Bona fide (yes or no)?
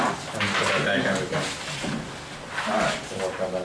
yes